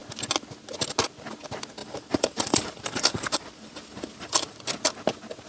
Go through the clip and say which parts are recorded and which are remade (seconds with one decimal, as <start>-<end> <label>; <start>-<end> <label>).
0.0-1.8 recorded; 1.8-4.6 remade; 4.6-5.5 recorded